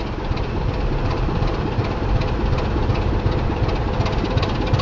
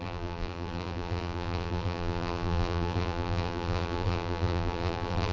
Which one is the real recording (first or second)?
first